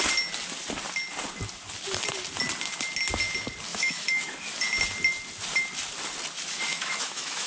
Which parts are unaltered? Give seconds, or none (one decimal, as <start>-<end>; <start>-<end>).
0.0-3.7; 4.3-6.7